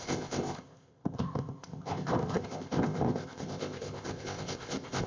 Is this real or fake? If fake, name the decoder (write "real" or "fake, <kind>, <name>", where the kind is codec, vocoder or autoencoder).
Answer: fake, codec, ZipCodec